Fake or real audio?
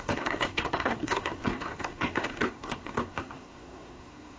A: fake